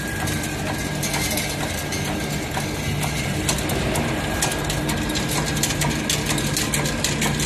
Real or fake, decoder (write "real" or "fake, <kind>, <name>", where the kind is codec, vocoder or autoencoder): real